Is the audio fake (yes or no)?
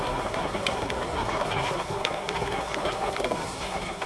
yes